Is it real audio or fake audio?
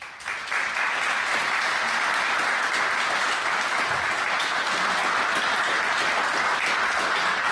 real